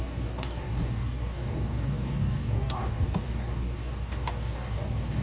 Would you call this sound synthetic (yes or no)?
yes